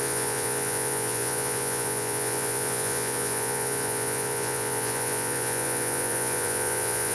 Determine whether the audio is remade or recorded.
remade